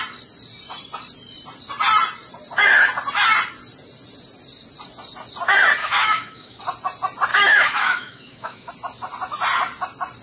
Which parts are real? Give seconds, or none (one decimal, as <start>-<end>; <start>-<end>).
0.0-5.8; 6.6-7.3; 8.7-10.2